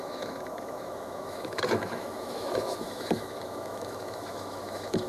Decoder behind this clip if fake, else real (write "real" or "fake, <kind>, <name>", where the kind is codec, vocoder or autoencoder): fake, autoencoder, DAC-VAE